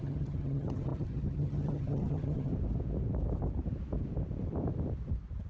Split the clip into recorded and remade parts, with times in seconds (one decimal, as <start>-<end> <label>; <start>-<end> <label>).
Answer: 0.0-2.5 remade; 2.5-5.5 recorded

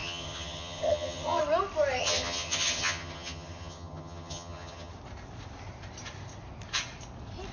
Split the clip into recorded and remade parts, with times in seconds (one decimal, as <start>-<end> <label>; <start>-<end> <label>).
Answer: 0.0-1.4 remade; 1.4-2.0 recorded; 2.0-4.9 remade; 4.9-7.5 recorded

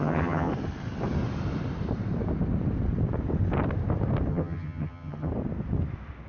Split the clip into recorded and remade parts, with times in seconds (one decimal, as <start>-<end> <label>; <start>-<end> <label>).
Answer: 0.0-0.5 remade; 0.5-4.3 recorded; 4.3-5.3 remade; 5.3-6.3 recorded

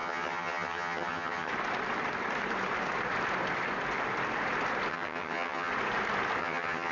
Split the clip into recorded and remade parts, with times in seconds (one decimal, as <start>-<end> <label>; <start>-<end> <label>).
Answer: 0.0-1.5 remade; 1.5-4.9 recorded; 4.9-5.7 remade; 5.7-6.4 recorded; 6.4-6.9 remade